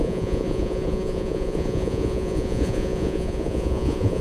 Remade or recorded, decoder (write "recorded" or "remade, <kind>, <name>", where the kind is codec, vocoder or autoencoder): remade, vocoder, Vocos